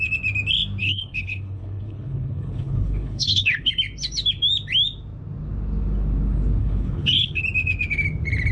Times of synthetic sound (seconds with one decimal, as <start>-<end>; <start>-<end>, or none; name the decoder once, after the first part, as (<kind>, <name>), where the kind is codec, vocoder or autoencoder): 0.8-3.7 (codec, HILCodec); 6.6-7.4